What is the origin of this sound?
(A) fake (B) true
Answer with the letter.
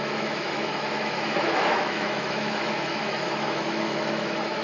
A